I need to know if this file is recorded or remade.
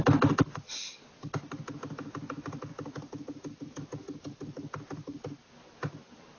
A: recorded